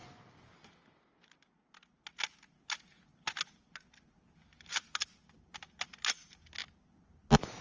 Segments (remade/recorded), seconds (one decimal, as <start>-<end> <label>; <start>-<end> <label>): 0.0-7.6 recorded